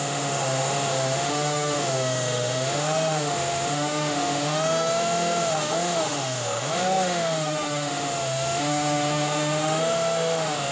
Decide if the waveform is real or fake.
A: fake